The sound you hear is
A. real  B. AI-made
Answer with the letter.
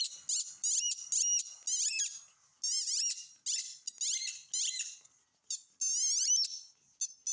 A